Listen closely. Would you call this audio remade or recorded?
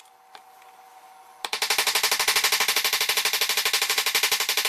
recorded